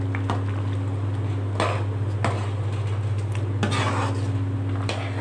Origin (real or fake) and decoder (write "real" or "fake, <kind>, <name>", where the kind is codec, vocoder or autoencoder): real